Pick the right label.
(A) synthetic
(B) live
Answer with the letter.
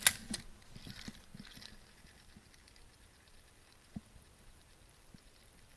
B